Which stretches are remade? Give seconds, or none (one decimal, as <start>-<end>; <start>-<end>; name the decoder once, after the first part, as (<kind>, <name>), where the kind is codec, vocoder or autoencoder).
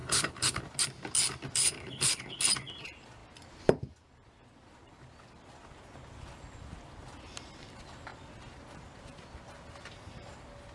0.0-0.6 (codec, HILCodec); 1.6-2.4